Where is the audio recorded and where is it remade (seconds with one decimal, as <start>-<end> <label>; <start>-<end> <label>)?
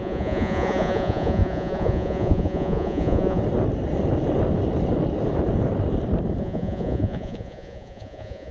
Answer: 0.0-3.4 remade; 3.4-6.4 recorded; 6.4-8.5 remade